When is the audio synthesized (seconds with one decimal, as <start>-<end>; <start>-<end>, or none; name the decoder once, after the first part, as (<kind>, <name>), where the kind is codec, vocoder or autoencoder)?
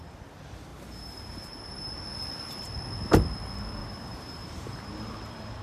0.7-2.0 (vocoder, BigVGAN v2); 3.8-4.9